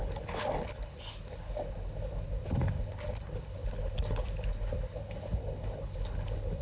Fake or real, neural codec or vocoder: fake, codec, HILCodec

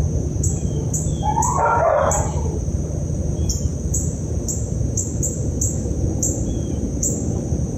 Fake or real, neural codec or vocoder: fake, vocoder, BigVGAN v2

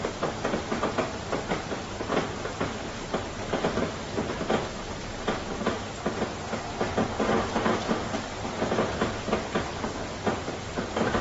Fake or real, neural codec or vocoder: real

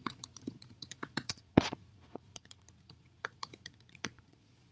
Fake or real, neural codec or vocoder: fake, vocoder, Vocos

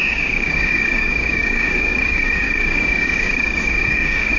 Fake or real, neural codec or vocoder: fake, codec, DAC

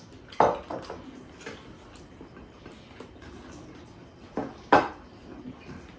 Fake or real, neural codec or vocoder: real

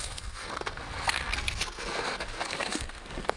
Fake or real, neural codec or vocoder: fake, codec, SNAC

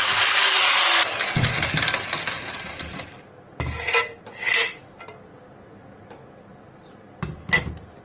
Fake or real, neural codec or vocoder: real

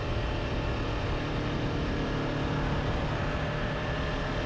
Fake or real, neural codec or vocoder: real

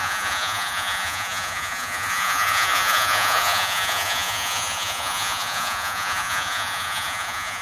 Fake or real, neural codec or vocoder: fake, vocoder, Vocos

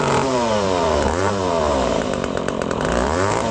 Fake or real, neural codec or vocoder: fake, vocoder, BigVGAN v2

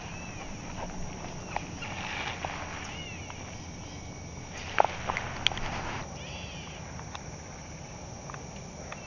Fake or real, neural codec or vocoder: real